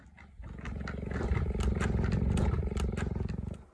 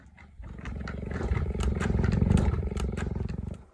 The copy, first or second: second